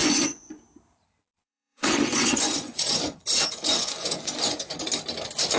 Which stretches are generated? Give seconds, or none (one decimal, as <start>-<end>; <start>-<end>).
0.0-0.6; 1.3-4.7